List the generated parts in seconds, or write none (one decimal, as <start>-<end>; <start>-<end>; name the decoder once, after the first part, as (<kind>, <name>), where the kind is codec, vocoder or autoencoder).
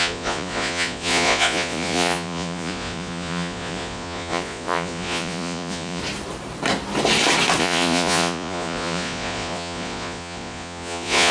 0.0-6.0 (vocoder, Vocos); 7.6-11.3